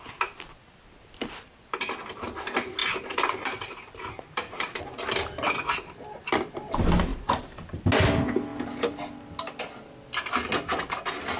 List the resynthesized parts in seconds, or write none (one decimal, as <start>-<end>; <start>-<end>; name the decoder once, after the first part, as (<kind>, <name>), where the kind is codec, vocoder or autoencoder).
2.8-4.8 (vocoder, BigVGAN v2); 7.1-7.9